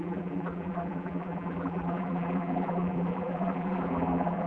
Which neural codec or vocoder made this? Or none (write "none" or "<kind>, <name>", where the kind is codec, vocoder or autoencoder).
vocoder, BigVGAN v2